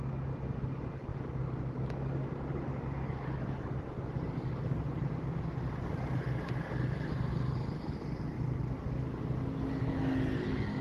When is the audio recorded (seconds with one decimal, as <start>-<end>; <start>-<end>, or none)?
0.0-10.8